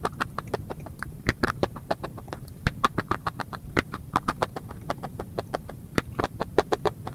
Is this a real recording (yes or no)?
no